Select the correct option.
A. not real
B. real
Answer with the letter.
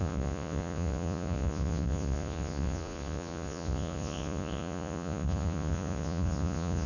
A